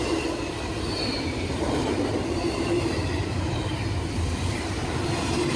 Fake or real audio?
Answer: fake